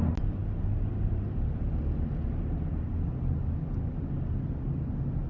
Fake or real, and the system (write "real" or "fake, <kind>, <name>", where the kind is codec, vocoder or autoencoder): real